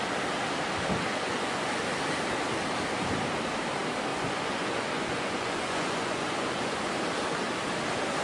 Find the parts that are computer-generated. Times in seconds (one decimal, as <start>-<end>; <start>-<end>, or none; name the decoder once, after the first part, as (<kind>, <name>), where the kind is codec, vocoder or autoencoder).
1.1-1.8 (vocoder, Vocos); 4.1-6.9